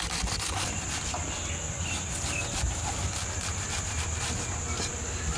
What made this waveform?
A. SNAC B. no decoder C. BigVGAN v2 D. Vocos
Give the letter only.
B